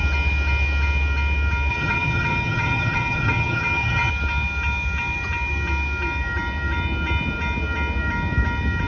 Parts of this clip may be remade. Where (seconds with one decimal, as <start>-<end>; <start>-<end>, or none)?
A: 1.7-4.1